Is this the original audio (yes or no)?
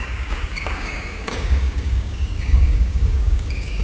no